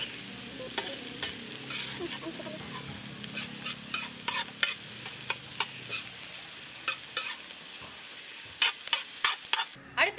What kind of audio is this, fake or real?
real